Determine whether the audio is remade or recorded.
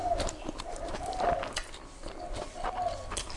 remade